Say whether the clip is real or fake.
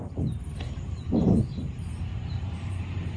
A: fake